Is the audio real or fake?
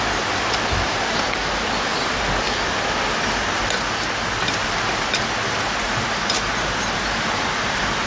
real